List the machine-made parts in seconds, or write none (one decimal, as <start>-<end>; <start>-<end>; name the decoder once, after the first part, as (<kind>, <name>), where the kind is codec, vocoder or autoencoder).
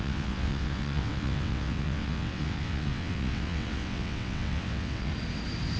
0.0-5.1 (vocoder, WaveNeXt)